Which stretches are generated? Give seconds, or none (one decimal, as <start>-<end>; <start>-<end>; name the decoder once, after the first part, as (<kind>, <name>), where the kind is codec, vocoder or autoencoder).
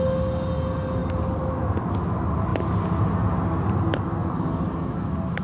none